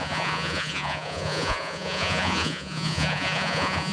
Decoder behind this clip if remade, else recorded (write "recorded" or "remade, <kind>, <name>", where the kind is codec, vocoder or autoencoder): remade, vocoder, Vocos